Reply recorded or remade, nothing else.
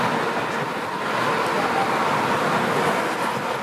recorded